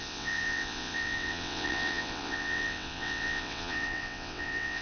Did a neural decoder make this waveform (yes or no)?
yes